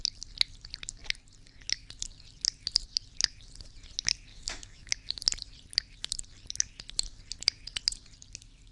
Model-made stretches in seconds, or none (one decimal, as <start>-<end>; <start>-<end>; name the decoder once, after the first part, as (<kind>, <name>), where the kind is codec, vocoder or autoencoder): 4.3-4.9 (autoencoder, DAC-VAE)